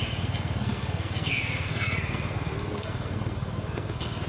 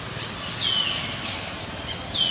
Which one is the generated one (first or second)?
first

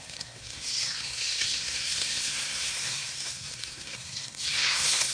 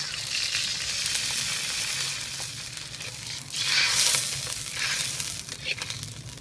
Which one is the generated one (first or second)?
first